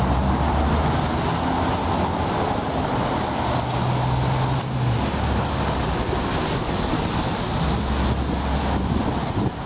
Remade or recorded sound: recorded